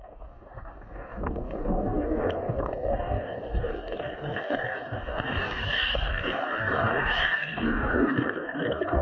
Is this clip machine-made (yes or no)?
yes